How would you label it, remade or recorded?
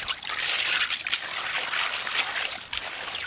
recorded